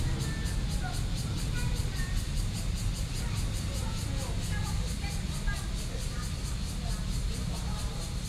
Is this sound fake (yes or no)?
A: no